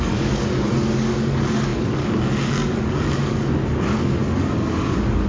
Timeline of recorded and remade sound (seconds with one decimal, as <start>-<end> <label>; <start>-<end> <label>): 0.0-5.3 remade